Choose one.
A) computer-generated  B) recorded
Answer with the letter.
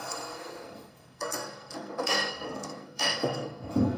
A